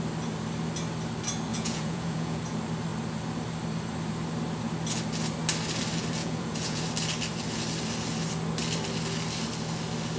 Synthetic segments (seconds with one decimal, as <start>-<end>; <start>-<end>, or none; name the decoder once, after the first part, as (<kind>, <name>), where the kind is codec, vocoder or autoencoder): 1.5-2.4 (vocoder, Vocos); 6.2-6.8